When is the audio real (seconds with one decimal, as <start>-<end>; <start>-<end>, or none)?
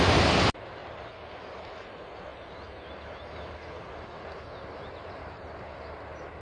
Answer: 0.0-6.4